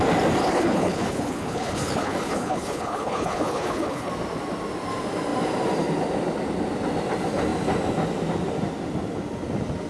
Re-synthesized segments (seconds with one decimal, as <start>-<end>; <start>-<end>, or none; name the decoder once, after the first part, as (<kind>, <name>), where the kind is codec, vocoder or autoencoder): 0.4-4.1 (codec, HILCodec)